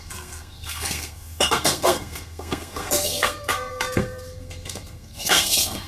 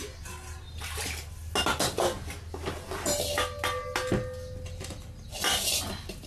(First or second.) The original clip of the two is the second